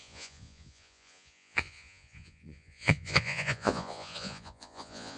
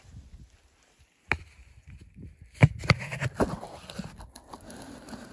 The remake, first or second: first